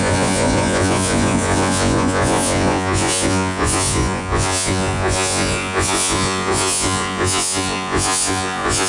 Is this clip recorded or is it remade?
remade